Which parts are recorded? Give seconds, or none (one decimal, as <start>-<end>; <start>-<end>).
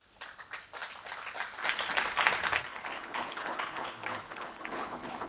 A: 0.0-2.7